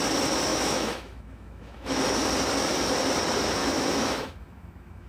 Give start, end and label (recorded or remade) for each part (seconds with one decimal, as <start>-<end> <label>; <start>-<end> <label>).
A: 0.0-0.5 recorded; 0.5-2.0 remade; 2.0-3.6 recorded; 3.6-5.1 remade